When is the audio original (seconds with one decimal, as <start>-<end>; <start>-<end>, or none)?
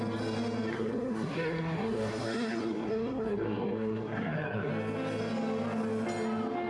0.0-0.7; 4.7-6.7